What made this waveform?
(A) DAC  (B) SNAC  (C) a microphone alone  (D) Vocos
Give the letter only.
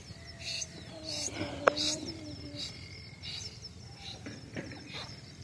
C